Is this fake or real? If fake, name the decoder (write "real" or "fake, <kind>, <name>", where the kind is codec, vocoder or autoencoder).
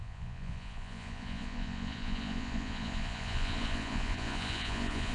fake, vocoder, Vocos